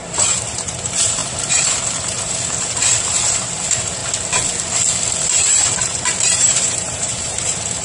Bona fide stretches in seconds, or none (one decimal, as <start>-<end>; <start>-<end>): 4.0-5.2